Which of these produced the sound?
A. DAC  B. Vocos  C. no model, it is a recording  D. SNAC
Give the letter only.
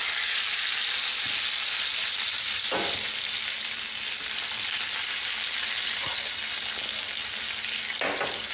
C